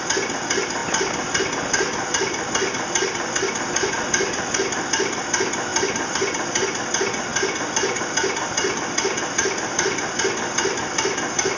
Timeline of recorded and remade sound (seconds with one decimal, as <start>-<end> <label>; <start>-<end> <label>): 0.0-5.7 recorded; 5.7-6.8 remade; 6.8-11.6 recorded